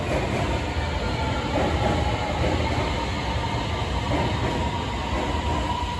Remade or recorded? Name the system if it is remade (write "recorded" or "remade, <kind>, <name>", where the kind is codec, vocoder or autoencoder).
recorded